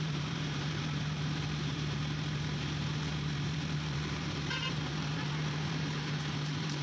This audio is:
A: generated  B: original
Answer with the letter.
A